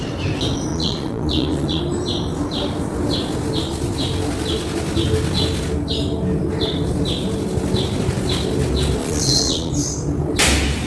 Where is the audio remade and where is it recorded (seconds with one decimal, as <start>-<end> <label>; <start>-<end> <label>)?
0.0-0.7 recorded; 0.7-1.8 remade; 1.8-9.0 recorded; 9.0-9.7 remade; 9.7-10.9 recorded